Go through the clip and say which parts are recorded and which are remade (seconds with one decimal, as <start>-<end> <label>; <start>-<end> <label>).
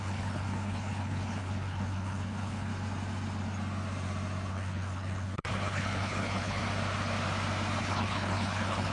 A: 0.0-2.7 remade; 2.7-4.5 recorded; 4.5-6.6 remade; 6.6-7.8 recorded; 7.8-8.9 remade